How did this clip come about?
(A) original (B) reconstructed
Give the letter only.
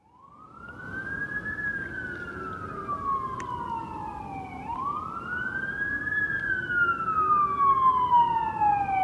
A